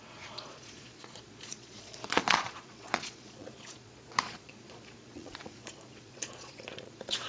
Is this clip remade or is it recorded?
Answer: remade